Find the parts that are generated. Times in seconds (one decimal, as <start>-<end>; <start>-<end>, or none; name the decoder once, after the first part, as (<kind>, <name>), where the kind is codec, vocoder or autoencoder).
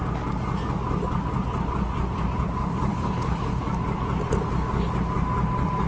2.9-3.6 (codec, HILCodec)